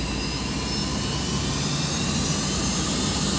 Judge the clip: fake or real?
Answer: real